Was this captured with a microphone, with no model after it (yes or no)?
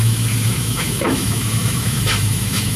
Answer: no